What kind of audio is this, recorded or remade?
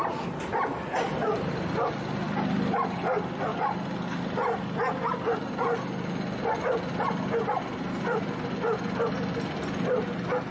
recorded